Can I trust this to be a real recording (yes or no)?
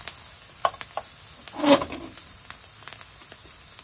yes